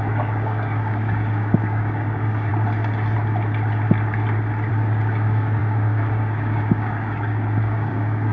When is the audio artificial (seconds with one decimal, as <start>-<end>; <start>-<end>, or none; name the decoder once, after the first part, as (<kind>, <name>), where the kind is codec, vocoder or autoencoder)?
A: 0.0-2.5 (codec, DAC); 4.7-8.3